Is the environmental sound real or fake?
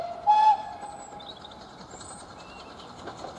real